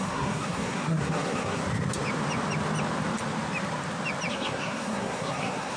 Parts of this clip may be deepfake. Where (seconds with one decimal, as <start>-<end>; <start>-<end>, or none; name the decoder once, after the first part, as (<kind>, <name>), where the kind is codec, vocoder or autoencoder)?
0.0-1.6 (codec, SNAC); 4.3-5.8